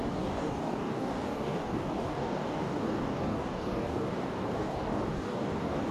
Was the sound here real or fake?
fake